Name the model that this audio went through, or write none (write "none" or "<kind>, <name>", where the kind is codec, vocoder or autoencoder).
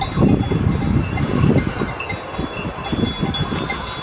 none